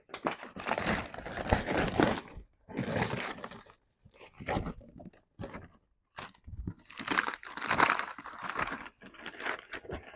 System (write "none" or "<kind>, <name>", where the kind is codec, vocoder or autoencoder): none